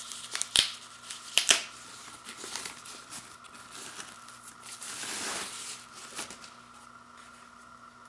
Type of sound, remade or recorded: recorded